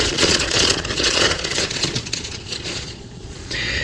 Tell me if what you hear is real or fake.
fake